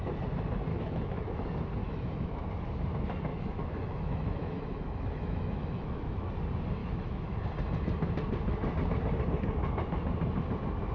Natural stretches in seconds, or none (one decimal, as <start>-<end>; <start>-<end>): 0.0-0.7; 1.3-1.8; 2.4-3.3; 6.3-6.8; 7.4-10.9

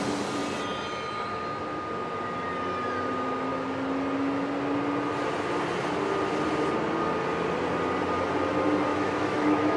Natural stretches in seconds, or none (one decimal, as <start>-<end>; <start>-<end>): 0.0-8.9